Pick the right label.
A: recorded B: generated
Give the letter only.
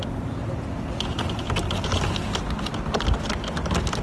A